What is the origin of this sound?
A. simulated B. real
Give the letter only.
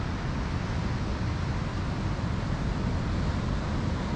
B